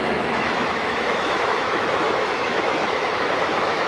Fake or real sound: fake